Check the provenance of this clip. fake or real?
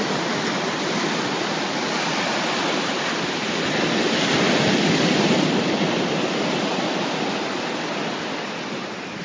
real